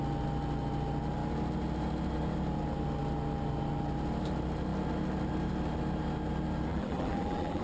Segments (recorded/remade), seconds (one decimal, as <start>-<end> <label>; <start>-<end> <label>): 0.0-6.7 recorded; 6.7-7.6 remade